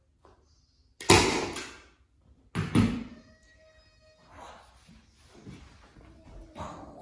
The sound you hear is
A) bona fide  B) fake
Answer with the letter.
A